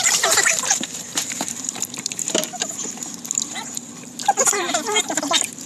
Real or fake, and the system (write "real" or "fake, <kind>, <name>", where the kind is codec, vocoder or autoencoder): fake, vocoder, BigVGAN v2